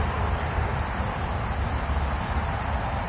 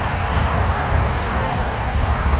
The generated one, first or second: second